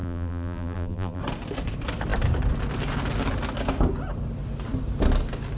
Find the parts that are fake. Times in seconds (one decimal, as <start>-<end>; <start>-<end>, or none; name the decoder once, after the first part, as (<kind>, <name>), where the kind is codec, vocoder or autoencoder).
0.0-1.2 (vocoder, BigVGAN v2)